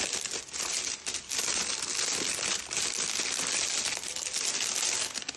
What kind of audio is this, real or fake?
real